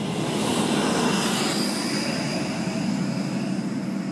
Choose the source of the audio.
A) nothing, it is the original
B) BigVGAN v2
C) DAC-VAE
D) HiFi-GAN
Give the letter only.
A